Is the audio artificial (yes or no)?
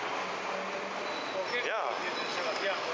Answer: no